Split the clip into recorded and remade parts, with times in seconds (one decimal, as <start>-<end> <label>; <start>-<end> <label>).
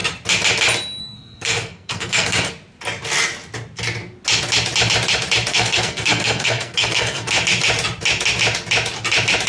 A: 0.0-1.0 recorded; 1.0-2.5 remade; 2.5-5.5 recorded; 5.5-7.4 remade; 7.4-9.5 recorded